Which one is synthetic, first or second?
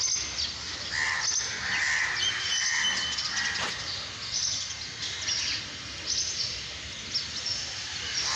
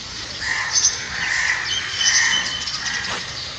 second